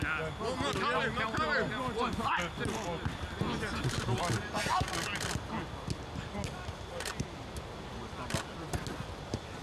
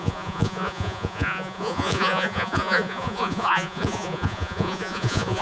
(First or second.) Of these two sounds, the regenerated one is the second